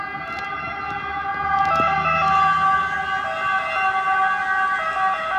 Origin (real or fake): real